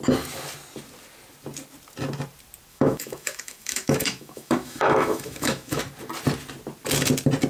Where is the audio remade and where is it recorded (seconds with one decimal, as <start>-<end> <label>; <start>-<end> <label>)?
0.0-2.7 recorded; 2.7-5.8 remade; 5.8-7.5 recorded